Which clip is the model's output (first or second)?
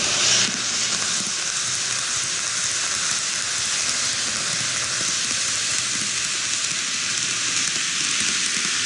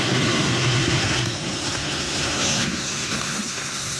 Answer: second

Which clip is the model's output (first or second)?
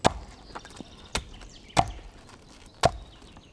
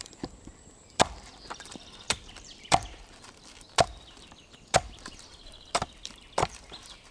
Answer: second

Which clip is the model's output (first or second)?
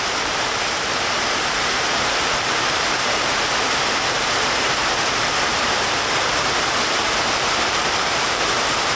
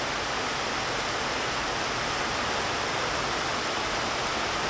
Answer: first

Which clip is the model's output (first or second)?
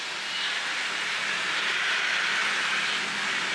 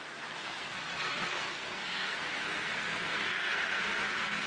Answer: second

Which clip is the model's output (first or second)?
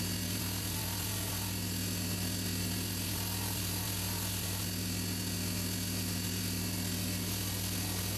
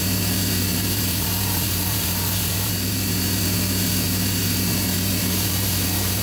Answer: second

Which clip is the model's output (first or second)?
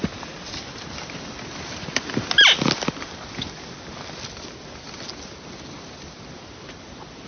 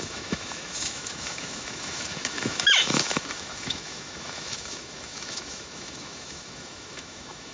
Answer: second